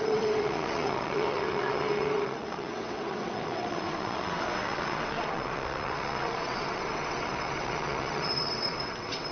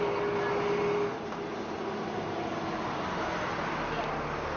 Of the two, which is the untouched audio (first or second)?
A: second